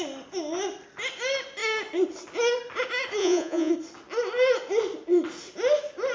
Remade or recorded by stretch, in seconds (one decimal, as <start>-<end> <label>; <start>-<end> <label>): 0.0-3.2 recorded; 3.2-3.7 remade; 3.7-6.1 recorded